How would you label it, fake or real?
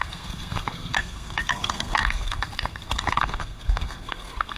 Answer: fake